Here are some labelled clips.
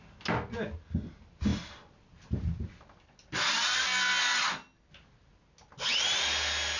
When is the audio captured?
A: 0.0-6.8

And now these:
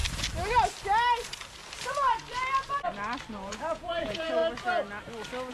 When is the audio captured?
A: 0.0-3.3; 4.4-5.5

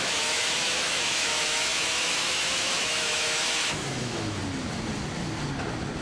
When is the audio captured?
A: 4.4-6.0

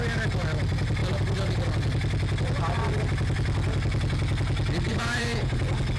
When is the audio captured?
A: 0.0-4.9; 5.6-6.0